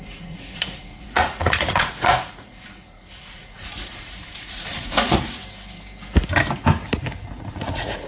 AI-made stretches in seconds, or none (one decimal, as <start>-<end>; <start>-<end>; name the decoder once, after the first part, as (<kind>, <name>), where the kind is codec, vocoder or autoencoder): 0.0-5.4 (vocoder, Vocos); 7.2-8.1